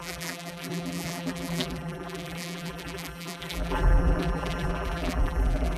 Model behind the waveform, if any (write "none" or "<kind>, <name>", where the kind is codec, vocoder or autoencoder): vocoder, BigVGAN v2